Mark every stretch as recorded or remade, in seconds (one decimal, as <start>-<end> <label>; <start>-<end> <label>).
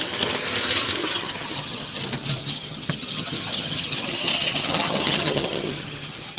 0.0-1.0 recorded; 1.0-2.0 remade; 2.0-2.4 recorded; 2.4-6.4 remade